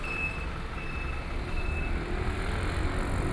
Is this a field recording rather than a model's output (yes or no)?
yes